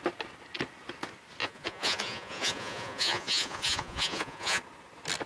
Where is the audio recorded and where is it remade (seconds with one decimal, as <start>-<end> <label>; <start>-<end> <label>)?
0.0-1.4 recorded; 1.4-4.6 remade; 4.6-5.3 recorded